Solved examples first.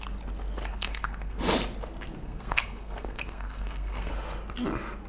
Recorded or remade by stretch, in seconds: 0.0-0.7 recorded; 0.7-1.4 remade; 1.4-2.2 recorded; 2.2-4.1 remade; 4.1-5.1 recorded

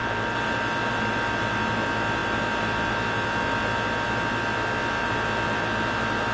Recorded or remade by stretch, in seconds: 0.0-6.3 recorded

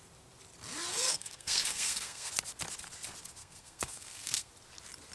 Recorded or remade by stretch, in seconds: 0.0-0.9 recorded; 0.9-2.3 remade; 2.3-3.4 recorded; 3.4-4.5 remade; 4.5-5.1 recorded

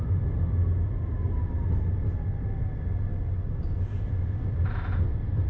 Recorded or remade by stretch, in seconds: 0.0-5.5 recorded

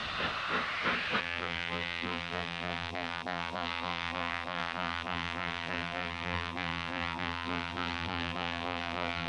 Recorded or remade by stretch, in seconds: 0.0-1.2 recorded; 1.2-9.3 remade

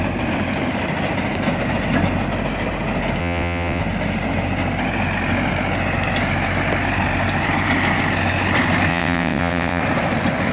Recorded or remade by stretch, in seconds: 0.0-3.2 recorded; 3.2-3.8 remade; 3.8-8.9 recorded; 8.9-9.8 remade; 9.8-10.5 recorded

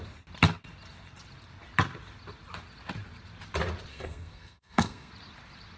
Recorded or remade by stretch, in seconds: 0.0-3.9 recorded; 3.9-5.1 remade; 5.1-5.8 recorded

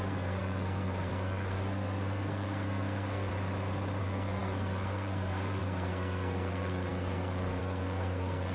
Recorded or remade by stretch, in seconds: 0.0-3.3 remade; 3.3-4.0 recorded; 4.0-8.5 remade